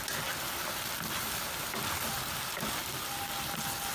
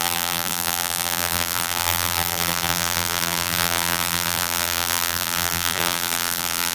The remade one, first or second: second